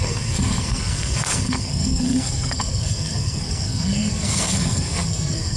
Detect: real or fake fake